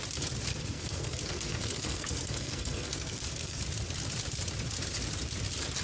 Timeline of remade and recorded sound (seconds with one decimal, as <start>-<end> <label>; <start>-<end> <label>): 0.0-0.5 recorded; 0.5-3.6 remade; 3.6-5.8 recorded